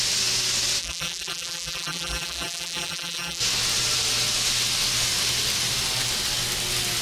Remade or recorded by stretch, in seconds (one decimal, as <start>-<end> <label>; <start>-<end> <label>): 0.0-0.8 recorded; 0.8-3.4 remade; 3.4-7.0 recorded